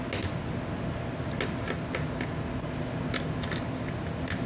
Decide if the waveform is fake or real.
real